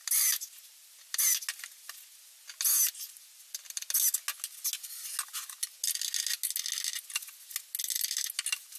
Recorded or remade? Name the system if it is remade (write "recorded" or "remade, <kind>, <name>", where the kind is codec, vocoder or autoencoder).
recorded